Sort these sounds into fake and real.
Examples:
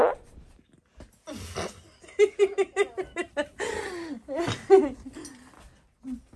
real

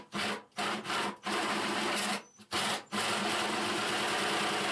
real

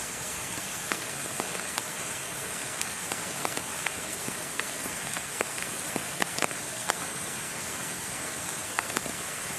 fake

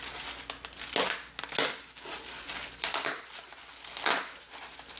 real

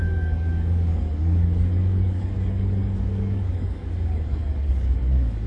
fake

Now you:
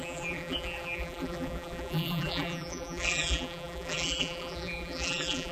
fake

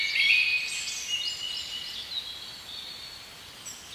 real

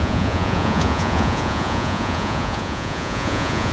fake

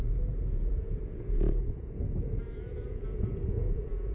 fake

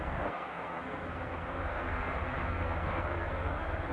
fake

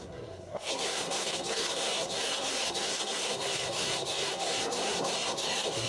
fake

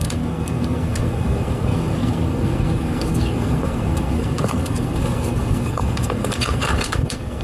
fake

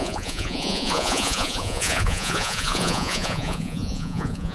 fake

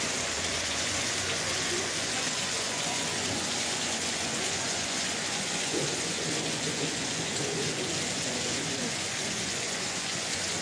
fake